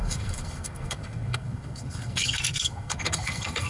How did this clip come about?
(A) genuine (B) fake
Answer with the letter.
B